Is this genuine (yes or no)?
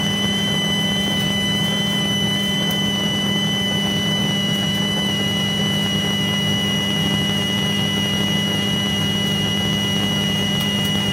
no